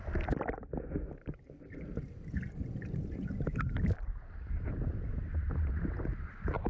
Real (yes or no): yes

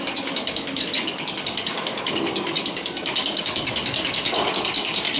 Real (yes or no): no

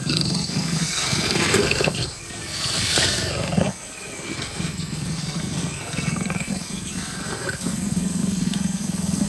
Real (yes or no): no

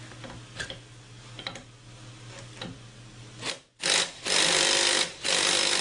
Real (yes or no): yes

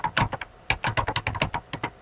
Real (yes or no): yes